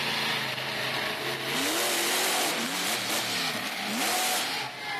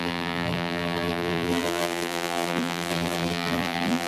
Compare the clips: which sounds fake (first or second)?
second